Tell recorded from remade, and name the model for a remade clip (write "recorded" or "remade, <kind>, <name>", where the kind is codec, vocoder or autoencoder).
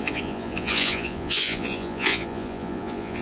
remade, vocoder, Vocos